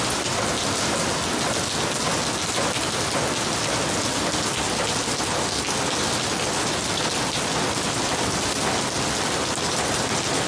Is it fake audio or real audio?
real